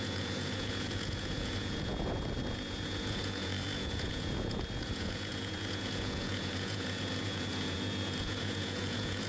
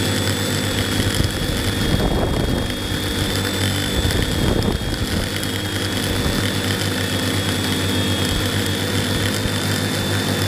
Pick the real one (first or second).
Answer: second